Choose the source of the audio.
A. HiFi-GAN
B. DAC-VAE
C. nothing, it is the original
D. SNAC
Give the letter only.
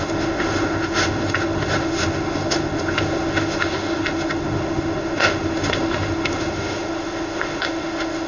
B